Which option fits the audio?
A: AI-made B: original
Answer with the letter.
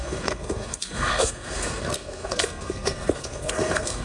A